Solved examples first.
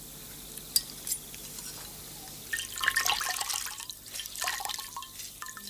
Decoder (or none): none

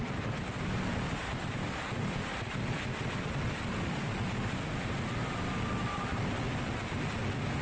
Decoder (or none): none